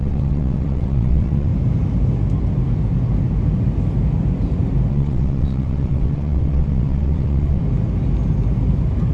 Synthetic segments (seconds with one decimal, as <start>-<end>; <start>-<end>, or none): 0.0-1.5; 4.9-7.6